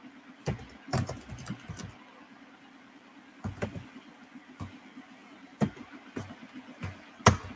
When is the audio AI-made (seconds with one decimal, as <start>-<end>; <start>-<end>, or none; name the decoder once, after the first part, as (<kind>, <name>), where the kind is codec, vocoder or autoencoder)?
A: none

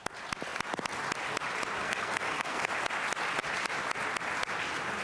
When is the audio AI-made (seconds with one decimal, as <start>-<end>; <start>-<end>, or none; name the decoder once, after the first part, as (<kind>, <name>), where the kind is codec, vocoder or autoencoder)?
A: 1.8-2.7 (codec, SNAC)

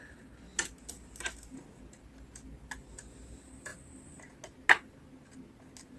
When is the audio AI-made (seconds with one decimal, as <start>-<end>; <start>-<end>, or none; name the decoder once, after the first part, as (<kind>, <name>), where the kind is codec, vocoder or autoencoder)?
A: none

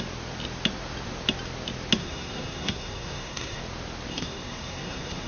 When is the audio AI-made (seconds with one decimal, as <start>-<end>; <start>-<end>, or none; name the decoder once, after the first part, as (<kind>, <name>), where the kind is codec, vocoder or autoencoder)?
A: 2.0-3.6 (codec, SNAC); 4.1-5.3

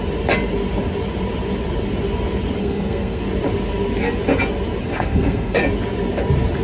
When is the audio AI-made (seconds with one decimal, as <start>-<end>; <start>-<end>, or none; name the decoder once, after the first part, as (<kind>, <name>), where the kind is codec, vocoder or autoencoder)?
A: 2.6-3.2 (codec, SNAC); 4.8-5.6

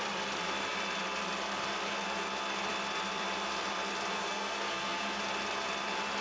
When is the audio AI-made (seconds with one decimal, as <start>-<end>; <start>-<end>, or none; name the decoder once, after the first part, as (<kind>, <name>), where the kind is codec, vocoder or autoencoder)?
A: 4.1-5.2 (codec, SNAC)

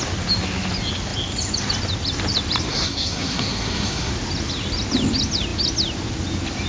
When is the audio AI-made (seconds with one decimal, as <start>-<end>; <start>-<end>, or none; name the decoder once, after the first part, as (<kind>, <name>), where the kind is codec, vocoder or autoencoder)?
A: 2.7-4.1 (codec, SNAC)